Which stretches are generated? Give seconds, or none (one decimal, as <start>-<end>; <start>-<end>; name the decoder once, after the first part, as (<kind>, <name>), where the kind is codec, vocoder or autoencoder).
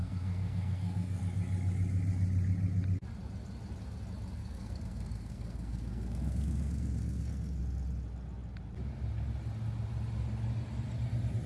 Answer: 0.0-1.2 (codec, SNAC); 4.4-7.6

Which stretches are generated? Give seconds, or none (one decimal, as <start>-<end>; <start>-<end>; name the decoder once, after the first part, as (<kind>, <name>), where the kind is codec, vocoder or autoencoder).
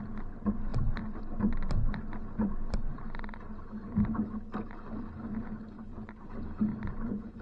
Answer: 6.7-7.4 (vocoder, Vocos)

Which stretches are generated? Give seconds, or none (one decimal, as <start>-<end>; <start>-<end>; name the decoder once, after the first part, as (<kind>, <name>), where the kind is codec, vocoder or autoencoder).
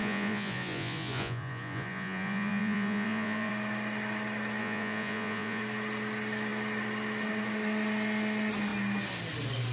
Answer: 0.0-3.5 (vocoder, Vocos); 4.6-5.6